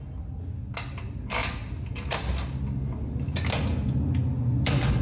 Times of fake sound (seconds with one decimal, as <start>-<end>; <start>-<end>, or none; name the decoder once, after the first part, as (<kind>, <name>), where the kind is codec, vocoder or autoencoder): none